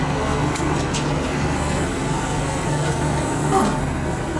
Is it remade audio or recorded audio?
remade